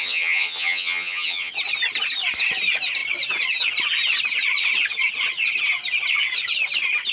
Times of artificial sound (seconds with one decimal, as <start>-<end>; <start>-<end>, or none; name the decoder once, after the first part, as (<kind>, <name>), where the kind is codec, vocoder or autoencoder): 0.0-1.5 (vocoder, HiFi-GAN)